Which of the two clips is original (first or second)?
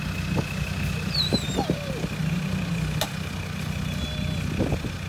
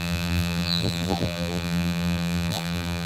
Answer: first